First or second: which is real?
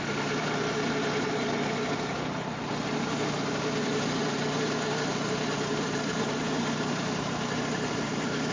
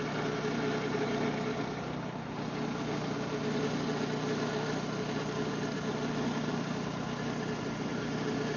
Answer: second